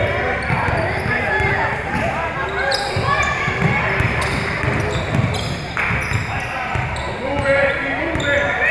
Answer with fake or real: real